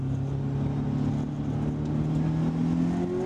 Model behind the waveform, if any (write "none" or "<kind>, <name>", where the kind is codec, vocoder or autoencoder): none